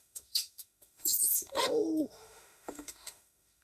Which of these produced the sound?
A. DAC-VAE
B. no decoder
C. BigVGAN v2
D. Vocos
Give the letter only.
A